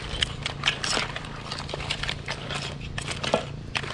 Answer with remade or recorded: remade